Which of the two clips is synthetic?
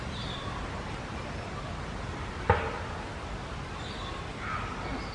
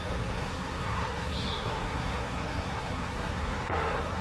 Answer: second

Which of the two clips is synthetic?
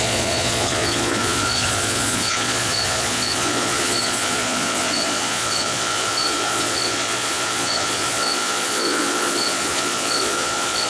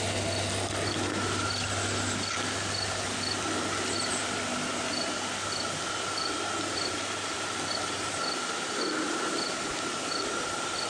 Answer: first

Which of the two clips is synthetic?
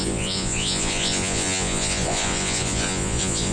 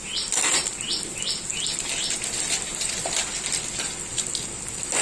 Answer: first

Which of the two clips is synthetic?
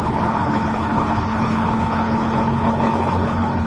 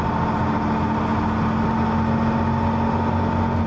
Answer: first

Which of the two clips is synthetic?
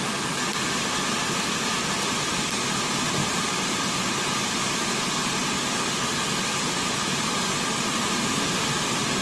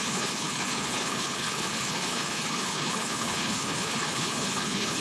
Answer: second